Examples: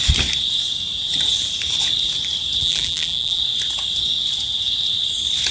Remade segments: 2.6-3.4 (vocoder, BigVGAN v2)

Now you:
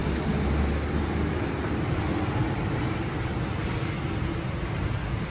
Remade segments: 0.0-0.6 (vocoder, BigVGAN v2)

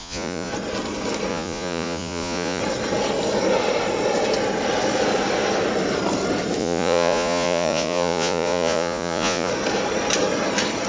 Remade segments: 0.0-0.5 (vocoder, Vocos); 1.3-2.6; 6.6-9.5

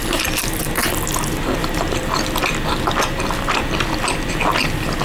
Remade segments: 0.0-0.6 (vocoder, BigVGAN v2); 1.6-2.2

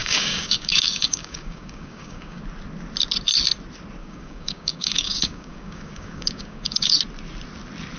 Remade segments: 0.0-2.4 (codec, DAC); 4.0-6.9

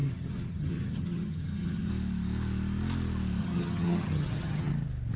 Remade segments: 0.0-1.9 (vocoder, HiFi-GAN); 3.4-4.7

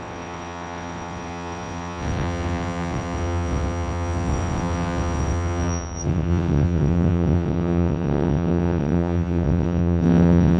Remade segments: 0.0-10.6 (vocoder, WaveNeXt)